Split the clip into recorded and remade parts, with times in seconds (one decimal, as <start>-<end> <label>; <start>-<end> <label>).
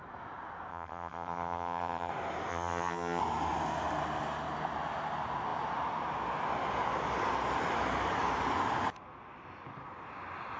0.0-0.7 recorded; 0.7-2.1 remade; 2.1-2.5 recorded; 2.5-3.2 remade; 3.2-10.6 recorded